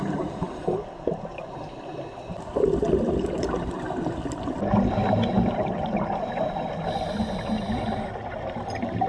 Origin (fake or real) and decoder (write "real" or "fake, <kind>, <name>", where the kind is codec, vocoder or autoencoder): real